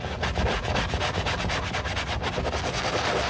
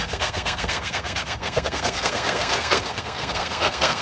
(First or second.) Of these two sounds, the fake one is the second